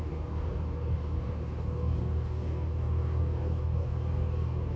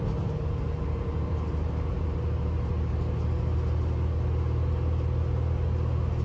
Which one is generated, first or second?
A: first